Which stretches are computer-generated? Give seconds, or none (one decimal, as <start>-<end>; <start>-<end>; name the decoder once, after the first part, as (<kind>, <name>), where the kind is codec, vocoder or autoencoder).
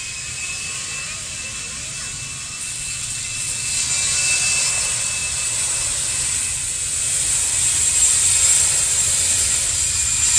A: 2.6-3.8 (vocoder, WaveNeXt)